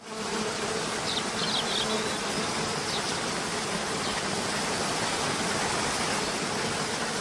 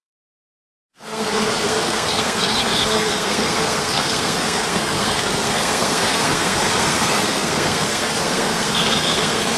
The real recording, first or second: first